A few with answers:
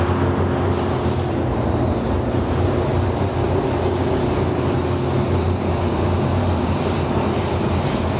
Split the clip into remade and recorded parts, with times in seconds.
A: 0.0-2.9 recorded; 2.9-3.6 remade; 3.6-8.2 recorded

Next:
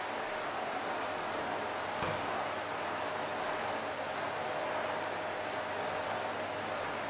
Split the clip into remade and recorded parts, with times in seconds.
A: 0.0-7.1 recorded

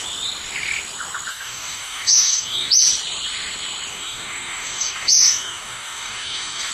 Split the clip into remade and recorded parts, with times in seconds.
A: 0.0-1.3 recorded; 1.3-2.7 remade; 2.7-3.9 recorded; 3.9-6.7 remade

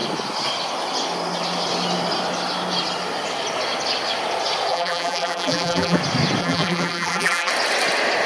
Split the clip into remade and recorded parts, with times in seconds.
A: 0.0-4.7 recorded; 4.7-6.0 remade; 6.0-6.4 recorded; 6.4-7.5 remade; 7.5-8.3 recorded

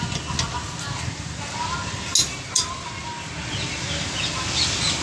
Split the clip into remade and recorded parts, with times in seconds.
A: 0.0-5.0 recorded

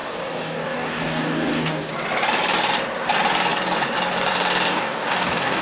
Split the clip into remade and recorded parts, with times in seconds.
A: 0.0-1.9 remade; 1.9-4.7 recorded; 4.7-5.6 remade

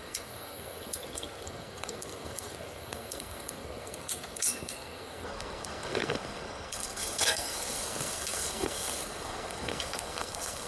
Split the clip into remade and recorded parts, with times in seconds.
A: 0.0-10.7 remade